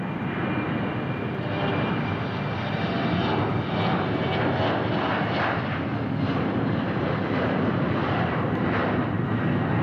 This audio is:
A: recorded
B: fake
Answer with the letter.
A